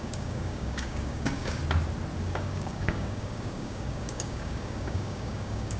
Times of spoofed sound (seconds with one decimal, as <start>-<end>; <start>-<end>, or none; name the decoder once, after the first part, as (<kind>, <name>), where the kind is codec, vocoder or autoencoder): 0.0-1.6 (codec, DAC); 2.2-5.8